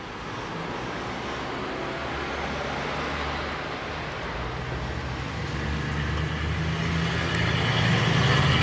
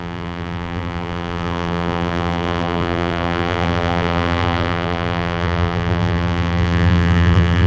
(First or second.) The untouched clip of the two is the first